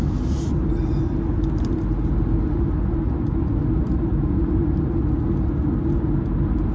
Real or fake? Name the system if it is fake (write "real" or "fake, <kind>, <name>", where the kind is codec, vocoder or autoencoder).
real